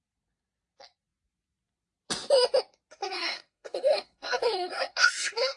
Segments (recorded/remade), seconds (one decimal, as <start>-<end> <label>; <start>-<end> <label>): 0.0-3.0 recorded; 3.0-5.6 remade